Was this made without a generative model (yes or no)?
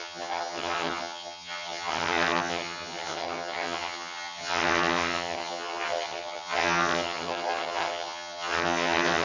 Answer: no